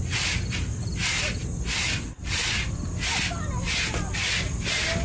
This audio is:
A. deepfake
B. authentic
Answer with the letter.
B